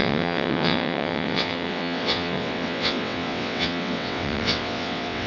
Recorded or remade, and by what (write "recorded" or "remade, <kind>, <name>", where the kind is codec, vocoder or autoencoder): remade, vocoder, WaveNeXt